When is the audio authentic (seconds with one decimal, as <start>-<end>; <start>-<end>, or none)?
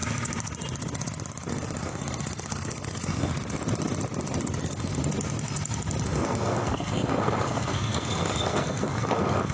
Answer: 0.0-1.5; 3.3-4.6; 5.0-6.0